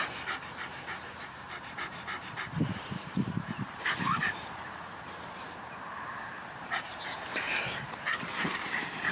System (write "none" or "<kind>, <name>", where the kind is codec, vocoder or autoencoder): vocoder, BigVGAN v2